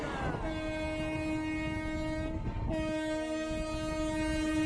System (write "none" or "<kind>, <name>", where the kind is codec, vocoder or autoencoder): none